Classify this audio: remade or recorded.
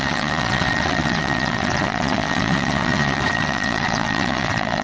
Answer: remade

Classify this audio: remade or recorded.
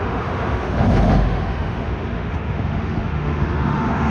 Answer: remade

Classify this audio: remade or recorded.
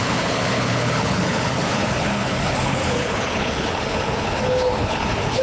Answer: remade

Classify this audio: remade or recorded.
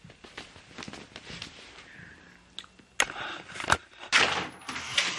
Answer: recorded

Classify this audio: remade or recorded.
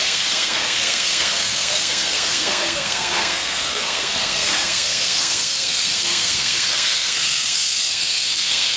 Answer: remade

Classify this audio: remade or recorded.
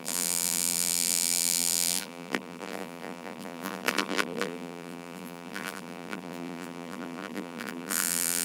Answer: remade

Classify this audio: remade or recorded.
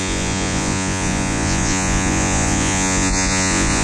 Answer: remade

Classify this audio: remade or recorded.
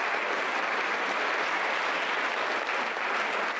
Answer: recorded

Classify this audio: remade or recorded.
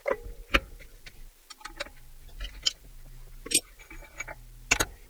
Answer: recorded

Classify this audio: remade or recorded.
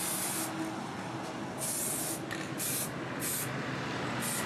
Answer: recorded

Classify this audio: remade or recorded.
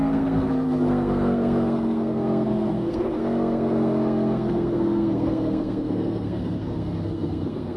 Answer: remade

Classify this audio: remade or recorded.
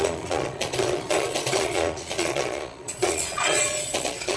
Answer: remade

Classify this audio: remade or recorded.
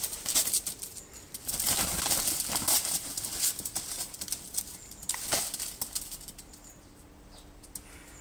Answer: recorded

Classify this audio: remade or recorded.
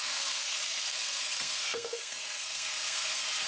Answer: remade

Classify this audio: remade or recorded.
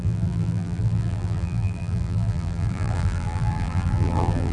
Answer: remade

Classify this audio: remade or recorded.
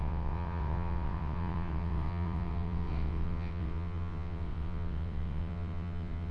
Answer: remade